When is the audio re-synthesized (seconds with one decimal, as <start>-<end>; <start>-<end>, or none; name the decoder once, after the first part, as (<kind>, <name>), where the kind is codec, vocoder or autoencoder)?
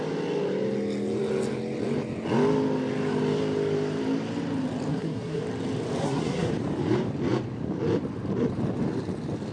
4.9-5.4 (codec, SNAC); 6.0-6.5